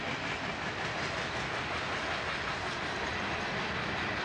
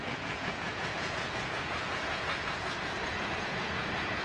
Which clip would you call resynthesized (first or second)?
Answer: second